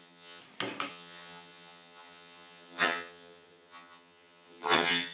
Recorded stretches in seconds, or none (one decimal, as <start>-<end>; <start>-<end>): 0.4-0.9